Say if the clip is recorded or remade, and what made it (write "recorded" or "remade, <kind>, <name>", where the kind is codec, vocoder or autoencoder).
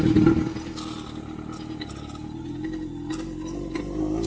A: recorded